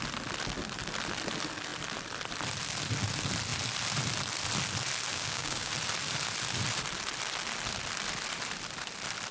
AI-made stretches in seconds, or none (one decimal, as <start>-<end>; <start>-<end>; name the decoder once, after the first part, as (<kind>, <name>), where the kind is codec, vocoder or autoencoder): 5.1-5.7 (codec, DAC)